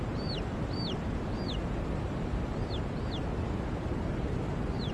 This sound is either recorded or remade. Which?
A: recorded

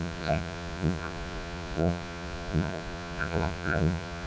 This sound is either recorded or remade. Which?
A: remade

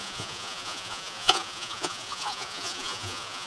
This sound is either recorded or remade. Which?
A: remade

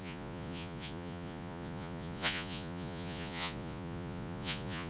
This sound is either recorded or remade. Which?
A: remade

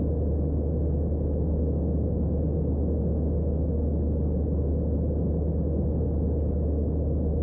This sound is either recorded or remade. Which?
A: recorded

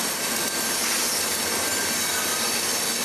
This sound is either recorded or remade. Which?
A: recorded